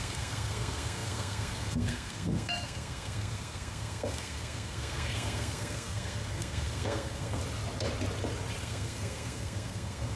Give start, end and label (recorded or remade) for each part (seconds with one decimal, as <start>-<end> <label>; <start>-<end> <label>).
0.0-7.4 remade; 7.4-8.6 recorded; 8.6-10.2 remade